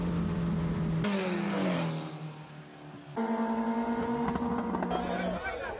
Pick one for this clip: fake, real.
real